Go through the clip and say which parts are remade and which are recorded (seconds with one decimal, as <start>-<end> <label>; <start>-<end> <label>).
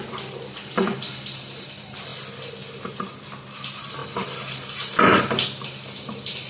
0.0-4.0 recorded; 4.0-5.2 remade; 5.2-6.5 recorded